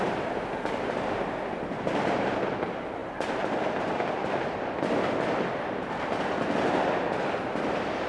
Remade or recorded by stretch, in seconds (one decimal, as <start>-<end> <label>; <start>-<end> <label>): 0.0-8.1 recorded